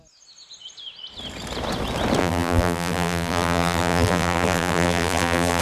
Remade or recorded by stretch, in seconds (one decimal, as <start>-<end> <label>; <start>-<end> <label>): 0.0-2.2 recorded; 2.2-5.6 remade